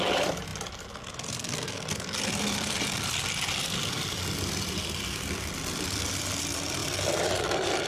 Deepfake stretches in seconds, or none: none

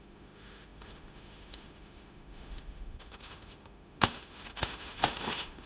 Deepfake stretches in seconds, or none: 0.0-5.7 (autoencoder, DAC-VAE)

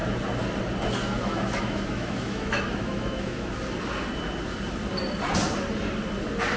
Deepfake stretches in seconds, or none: 1.0-3.5 (autoencoder, DAC-VAE)

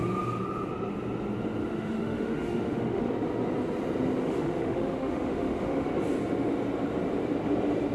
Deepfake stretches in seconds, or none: 1.6-3.1 (autoencoder, DAC-VAE); 4.2-5.9

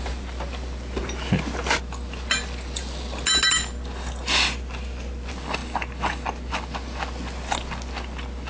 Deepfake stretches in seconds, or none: none